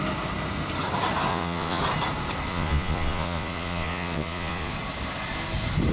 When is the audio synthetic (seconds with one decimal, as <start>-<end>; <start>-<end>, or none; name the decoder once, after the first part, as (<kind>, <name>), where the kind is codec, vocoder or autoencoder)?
1.3-1.8 (vocoder, Vocos); 2.5-4.7